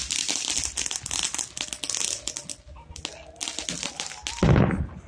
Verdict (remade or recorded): recorded